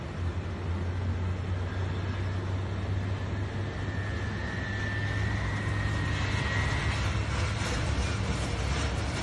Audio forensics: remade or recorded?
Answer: recorded